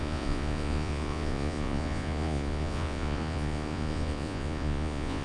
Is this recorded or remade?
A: remade